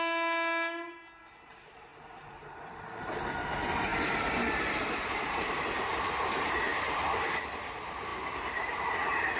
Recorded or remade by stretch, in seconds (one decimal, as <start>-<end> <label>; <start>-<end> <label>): 0.0-9.4 recorded